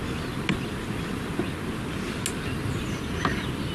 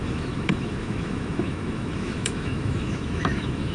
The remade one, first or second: second